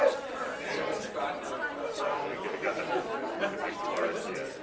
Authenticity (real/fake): real